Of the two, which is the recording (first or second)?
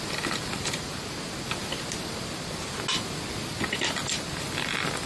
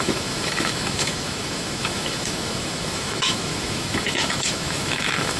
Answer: first